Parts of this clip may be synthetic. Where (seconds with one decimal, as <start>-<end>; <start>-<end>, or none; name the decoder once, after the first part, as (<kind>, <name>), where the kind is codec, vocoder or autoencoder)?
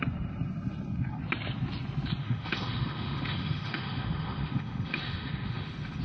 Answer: 2.2-6.0 (autoencoder, DAC-VAE)